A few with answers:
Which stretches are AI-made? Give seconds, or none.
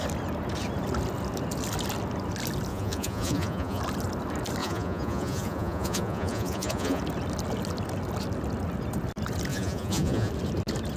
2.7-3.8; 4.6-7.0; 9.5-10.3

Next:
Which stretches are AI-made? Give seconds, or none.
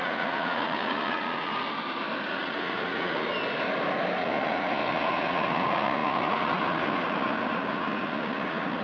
0.0-1.5; 2.3-3.3; 4.2-8.8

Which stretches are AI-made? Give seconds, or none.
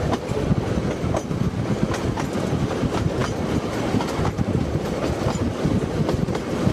none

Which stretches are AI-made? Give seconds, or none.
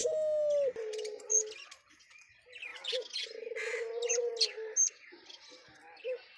none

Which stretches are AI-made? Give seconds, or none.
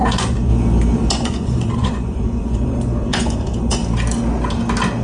0.0-0.5; 1.1-3.8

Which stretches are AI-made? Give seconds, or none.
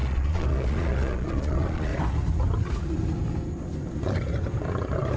0.0-1.9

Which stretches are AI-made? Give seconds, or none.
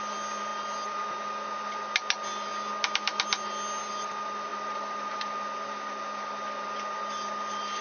none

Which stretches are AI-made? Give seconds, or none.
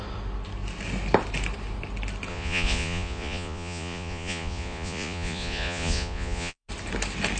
2.3-6.7